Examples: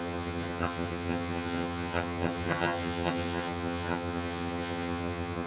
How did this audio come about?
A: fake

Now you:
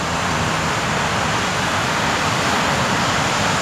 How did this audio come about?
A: fake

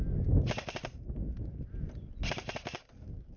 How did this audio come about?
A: real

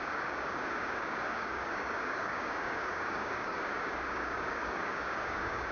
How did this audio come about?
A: fake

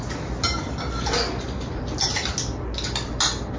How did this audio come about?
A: real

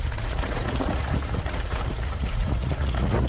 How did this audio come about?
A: fake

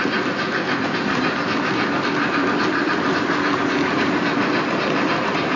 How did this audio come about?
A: real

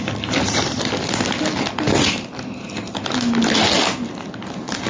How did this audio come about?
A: real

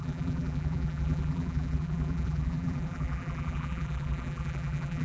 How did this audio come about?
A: fake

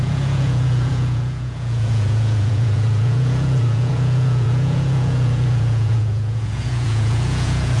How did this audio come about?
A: fake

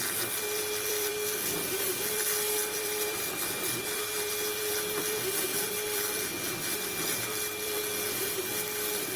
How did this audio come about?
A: fake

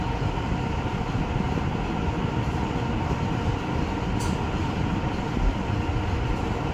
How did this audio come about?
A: real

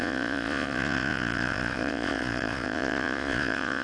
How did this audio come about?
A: fake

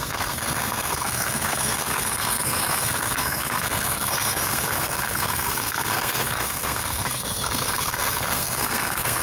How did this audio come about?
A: fake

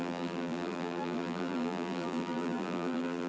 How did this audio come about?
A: fake